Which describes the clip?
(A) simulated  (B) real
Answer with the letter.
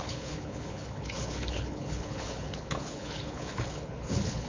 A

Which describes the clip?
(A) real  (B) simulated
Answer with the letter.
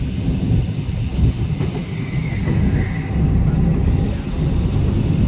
A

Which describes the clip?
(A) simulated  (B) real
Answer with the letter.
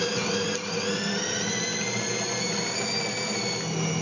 B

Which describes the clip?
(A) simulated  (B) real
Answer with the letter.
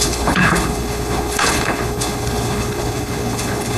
A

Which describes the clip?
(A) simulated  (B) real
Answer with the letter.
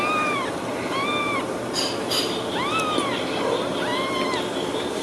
B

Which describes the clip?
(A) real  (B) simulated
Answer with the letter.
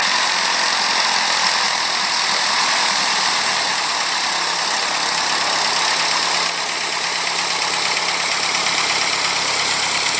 A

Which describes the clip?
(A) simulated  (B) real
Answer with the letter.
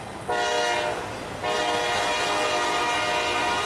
B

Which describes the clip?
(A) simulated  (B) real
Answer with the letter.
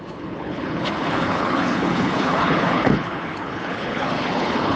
A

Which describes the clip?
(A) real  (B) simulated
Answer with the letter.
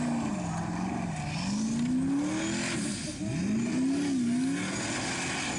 A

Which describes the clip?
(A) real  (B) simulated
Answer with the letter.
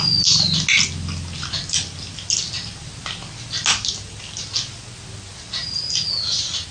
A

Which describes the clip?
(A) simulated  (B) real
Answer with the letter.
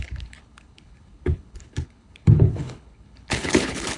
A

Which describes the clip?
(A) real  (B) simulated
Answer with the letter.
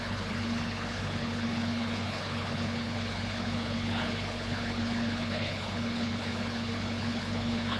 B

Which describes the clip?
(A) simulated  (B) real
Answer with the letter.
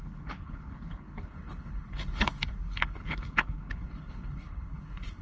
A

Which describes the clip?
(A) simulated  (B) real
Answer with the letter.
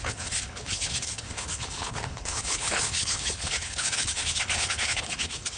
A